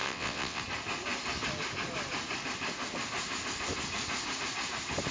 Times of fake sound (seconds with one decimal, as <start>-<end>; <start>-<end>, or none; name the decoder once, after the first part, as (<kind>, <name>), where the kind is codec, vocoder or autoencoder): 0.0-0.6 (vocoder, WaveNeXt)

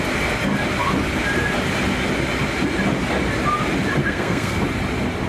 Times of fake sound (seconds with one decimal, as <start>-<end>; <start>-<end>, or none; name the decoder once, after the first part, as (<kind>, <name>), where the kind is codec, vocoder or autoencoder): 4.0-4.6 (codec, SNAC)

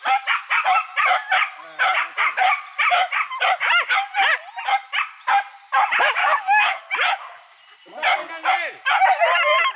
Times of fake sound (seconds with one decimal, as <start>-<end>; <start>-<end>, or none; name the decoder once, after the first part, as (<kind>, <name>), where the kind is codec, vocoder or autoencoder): 6.2-6.8 (codec, DAC)

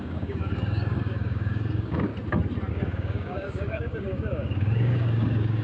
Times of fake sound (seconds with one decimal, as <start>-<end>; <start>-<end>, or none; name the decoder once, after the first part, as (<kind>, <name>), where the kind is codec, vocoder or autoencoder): 0.0-2.1 (codec, DAC); 2.7-5.6

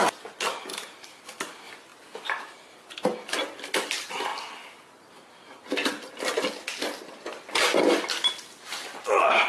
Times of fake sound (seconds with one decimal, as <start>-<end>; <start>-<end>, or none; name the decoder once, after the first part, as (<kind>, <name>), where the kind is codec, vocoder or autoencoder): 0.7-1.2 (vocoder, BigVGAN v2)

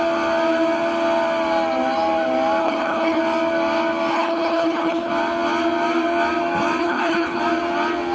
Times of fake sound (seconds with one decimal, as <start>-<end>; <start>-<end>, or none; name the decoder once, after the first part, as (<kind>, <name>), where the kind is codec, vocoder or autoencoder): 2.6-3.2 (codec, HILCodec); 4.1-5.1; 6.8-7.4